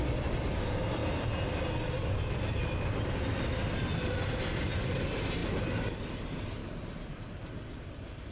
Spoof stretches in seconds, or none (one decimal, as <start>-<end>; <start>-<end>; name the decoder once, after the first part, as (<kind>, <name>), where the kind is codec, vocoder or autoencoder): none